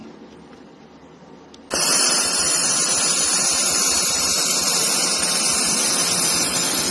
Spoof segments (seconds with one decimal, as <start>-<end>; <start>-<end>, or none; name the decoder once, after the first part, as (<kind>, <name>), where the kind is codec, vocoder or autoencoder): 3.8-5.4 (vocoder, BigVGAN v2)